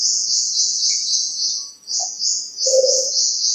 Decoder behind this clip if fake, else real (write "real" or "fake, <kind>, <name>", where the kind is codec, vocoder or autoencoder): fake, vocoder, Vocos